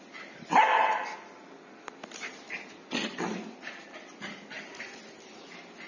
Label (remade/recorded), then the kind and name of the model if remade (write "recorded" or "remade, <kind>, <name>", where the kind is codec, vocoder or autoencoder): recorded